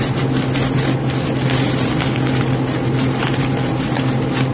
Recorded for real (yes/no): yes